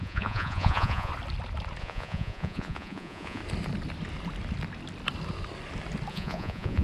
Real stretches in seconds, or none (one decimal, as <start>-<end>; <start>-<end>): 1.1-1.8; 3.4-6.1